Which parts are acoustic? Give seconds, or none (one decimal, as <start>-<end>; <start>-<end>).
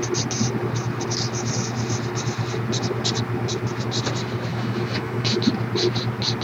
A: 0.0-4.5; 5.5-6.4